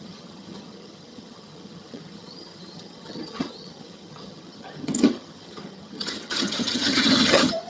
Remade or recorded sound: remade